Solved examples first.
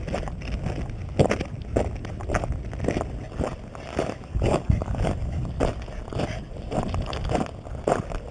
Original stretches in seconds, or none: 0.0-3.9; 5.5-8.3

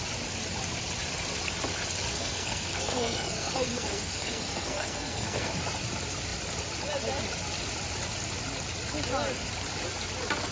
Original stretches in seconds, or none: 0.0-2.1; 5.5-10.5

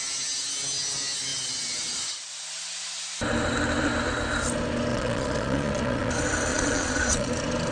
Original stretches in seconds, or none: 0.0-4.9; 6.1-6.5; 7.3-7.7

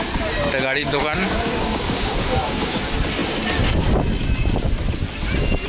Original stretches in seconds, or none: 0.0-0.8; 2.7-5.7

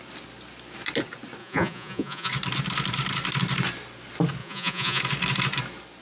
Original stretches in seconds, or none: 0.0-1.4; 2.3-4.4; 5.0-6.0

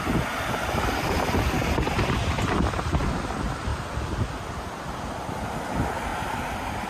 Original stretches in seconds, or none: 0.0-6.9